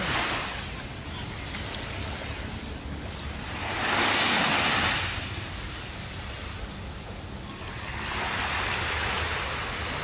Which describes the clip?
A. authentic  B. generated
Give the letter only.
A